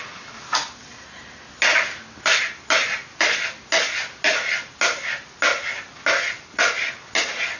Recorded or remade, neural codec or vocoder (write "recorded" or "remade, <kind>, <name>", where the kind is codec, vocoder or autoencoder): recorded